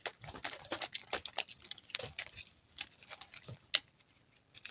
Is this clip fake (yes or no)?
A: no